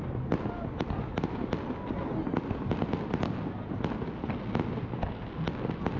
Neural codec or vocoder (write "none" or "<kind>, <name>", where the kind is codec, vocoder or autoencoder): none